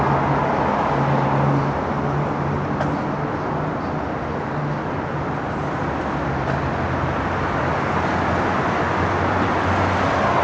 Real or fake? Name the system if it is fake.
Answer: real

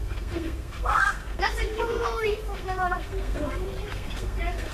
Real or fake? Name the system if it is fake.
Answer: fake, codec, SNAC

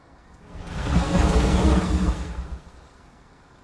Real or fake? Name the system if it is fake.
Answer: fake, codec, SNAC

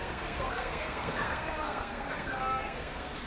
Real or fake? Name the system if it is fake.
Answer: fake, codec, SNAC